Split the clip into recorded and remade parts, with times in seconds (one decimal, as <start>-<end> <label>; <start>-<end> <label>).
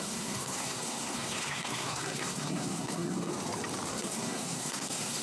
0.0-3.3 remade; 3.3-3.9 recorded; 3.9-5.2 remade